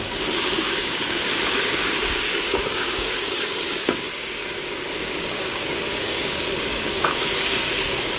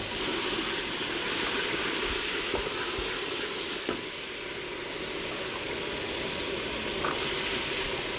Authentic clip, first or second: second